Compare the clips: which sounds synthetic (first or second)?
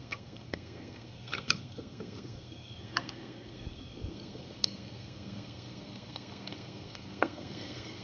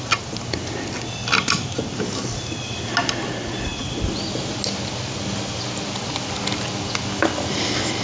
first